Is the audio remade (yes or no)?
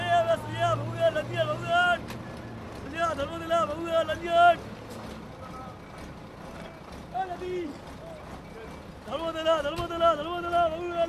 no